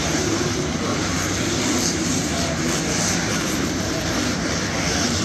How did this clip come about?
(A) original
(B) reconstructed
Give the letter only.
B